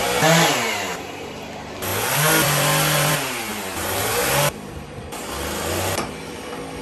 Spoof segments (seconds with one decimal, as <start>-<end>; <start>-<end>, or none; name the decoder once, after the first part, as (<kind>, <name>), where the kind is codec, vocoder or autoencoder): 1.9-3.1 (vocoder, BigVGAN v2)